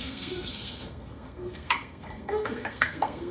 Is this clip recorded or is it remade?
remade